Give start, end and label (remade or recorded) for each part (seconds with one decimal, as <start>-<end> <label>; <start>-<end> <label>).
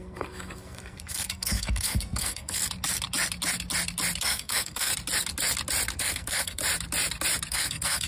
0.0-2.6 remade; 2.6-4.2 recorded; 4.2-4.9 remade; 4.9-6.0 recorded; 6.0-6.6 remade; 6.6-7.5 recorded; 7.5-8.1 remade